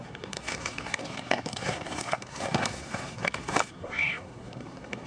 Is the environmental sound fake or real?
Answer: fake